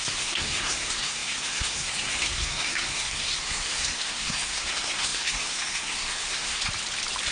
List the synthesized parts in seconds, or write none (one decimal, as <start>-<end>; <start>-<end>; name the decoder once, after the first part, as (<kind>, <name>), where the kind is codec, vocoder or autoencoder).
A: 0.0-6.6 (codec, SNAC)